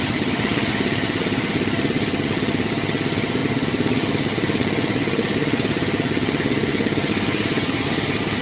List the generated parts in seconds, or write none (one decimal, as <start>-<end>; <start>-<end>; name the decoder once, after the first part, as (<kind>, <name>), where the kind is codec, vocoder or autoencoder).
0.0-8.4 (vocoder, HiFi-GAN)